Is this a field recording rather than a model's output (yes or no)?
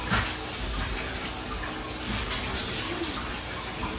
yes